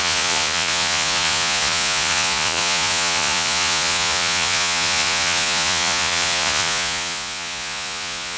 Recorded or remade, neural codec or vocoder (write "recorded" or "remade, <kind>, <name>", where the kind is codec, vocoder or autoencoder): remade, vocoder, Vocos